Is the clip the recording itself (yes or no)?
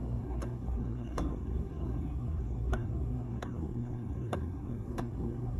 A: no